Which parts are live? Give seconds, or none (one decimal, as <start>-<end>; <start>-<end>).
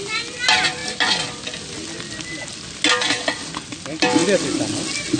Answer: 0.0-5.2